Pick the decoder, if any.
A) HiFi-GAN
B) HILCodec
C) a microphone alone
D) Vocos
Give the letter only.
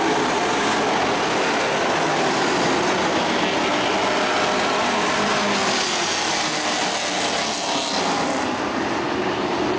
C